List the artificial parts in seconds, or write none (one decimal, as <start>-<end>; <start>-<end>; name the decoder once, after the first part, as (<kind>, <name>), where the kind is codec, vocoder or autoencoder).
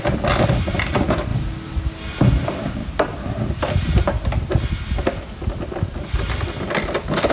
2.8-7.3 (vocoder, BigVGAN v2)